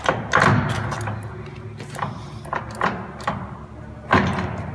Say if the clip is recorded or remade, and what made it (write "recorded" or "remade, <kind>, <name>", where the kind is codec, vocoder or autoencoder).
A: recorded